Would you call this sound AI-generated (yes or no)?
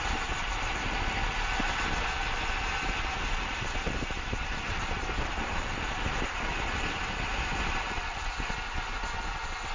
no